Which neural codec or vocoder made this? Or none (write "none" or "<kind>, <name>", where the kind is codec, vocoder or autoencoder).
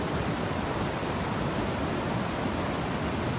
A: none